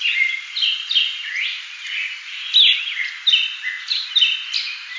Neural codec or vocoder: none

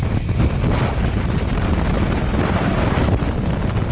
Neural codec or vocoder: none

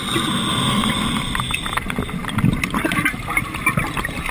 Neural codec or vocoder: none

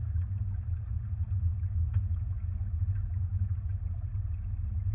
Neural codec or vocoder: none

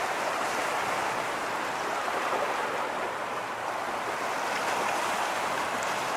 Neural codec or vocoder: vocoder, BigVGAN v2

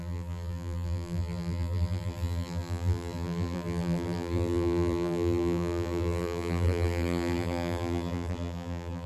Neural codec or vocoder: vocoder, BigVGAN v2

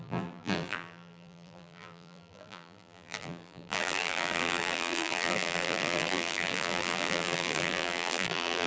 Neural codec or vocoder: vocoder, BigVGAN v2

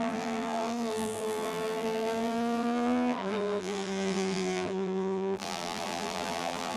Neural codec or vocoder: vocoder, BigVGAN v2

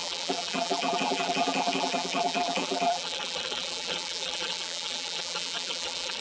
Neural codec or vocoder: vocoder, BigVGAN v2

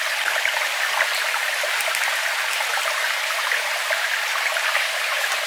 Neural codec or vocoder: none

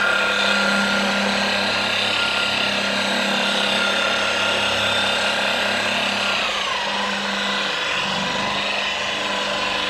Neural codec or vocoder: none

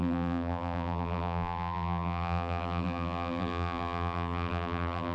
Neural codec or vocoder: vocoder, BigVGAN v2